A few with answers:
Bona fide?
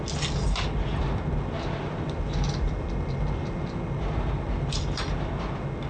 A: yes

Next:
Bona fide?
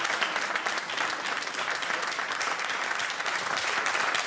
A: yes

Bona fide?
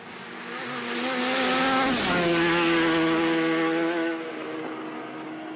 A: yes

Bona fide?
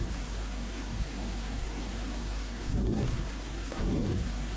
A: no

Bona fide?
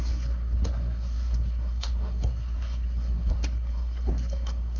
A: no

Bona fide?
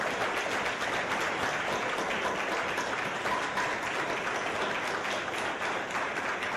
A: yes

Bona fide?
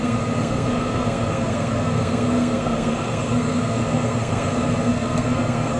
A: no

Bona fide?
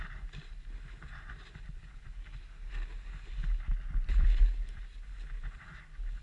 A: yes